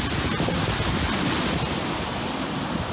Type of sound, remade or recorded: recorded